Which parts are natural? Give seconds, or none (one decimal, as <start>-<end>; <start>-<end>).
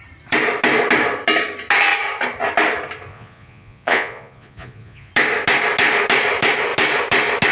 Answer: 0.0-3.1; 5.1-7.5